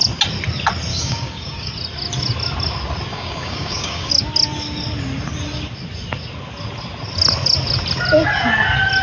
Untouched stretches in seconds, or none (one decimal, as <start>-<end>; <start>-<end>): 0.0-0.9; 1.7-3.1; 4.1-9.0